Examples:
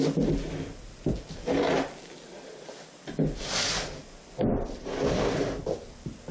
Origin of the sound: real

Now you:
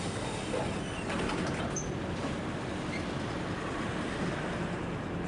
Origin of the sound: real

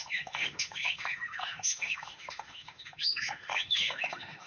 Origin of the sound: fake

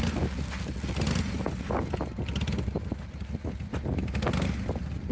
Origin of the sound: real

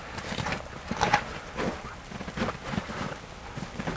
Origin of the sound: real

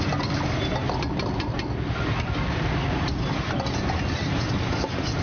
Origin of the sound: real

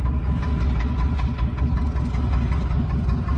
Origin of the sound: real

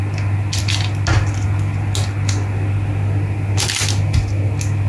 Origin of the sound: real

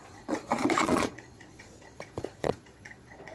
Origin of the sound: fake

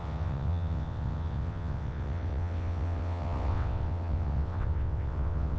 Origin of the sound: fake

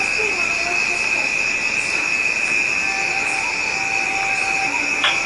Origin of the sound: real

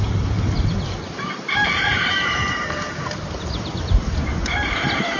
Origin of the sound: fake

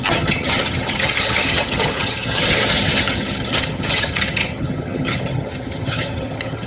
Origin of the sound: fake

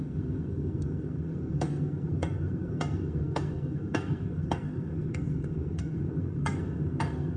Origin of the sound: fake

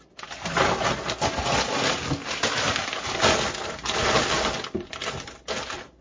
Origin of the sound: real